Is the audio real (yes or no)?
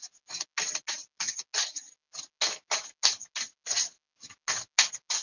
yes